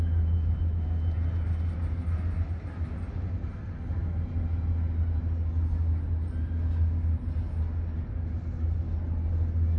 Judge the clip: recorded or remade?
recorded